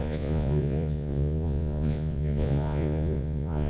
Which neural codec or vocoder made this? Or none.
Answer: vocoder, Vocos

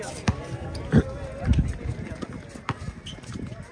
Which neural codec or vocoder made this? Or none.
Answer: none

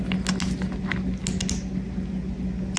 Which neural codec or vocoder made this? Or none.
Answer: none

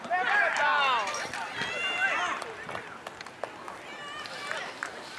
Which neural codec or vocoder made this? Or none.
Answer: none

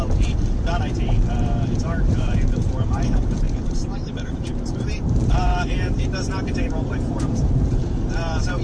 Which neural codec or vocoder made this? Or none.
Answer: vocoder, BigVGAN v2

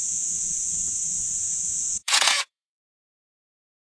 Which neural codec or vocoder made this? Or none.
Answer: vocoder, Vocos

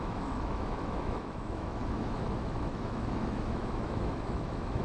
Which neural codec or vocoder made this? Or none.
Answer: autoencoder, DAC-VAE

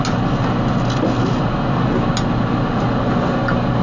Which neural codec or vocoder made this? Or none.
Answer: none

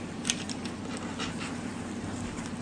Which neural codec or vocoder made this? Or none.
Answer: none